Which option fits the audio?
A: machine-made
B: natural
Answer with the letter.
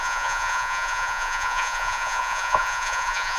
A